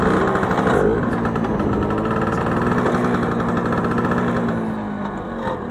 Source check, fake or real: real